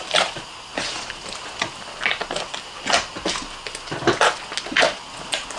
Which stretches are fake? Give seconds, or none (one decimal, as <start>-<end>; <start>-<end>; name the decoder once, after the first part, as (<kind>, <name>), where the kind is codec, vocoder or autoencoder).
0.7-2.8 (vocoder, BigVGAN v2)